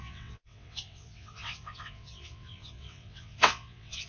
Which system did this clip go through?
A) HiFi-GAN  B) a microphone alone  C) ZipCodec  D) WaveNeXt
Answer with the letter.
D